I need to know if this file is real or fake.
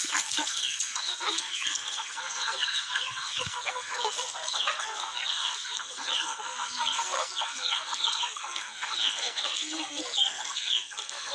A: fake